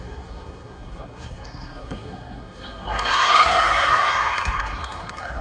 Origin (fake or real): fake